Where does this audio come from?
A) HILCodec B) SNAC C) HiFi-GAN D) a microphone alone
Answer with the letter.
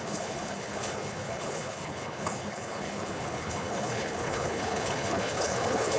A